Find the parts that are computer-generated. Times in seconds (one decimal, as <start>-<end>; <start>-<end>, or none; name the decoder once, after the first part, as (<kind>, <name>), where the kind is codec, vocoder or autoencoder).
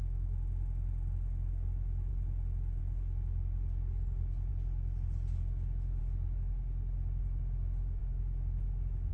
none